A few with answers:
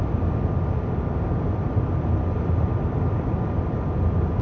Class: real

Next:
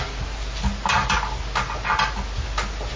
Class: real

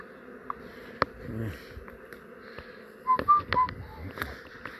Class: real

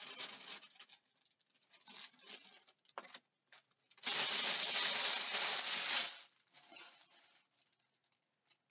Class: real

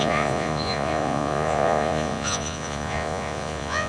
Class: fake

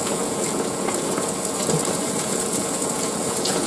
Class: fake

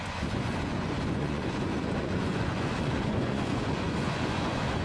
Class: fake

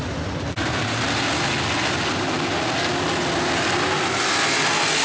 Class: real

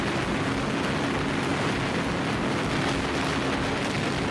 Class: real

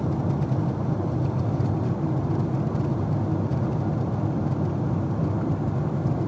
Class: real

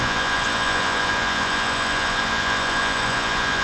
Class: fake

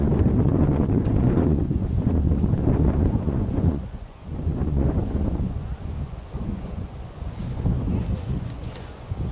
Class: fake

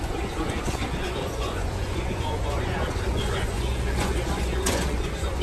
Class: fake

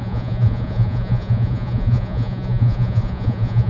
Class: fake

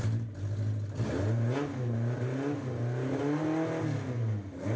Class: real